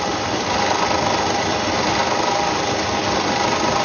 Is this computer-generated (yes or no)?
no